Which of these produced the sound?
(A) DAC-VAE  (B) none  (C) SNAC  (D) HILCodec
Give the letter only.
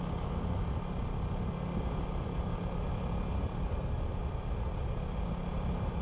B